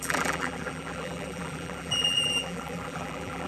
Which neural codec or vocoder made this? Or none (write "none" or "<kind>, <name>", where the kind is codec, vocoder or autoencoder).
vocoder, BigVGAN v2